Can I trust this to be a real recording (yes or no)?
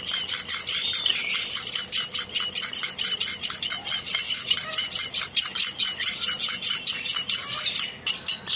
yes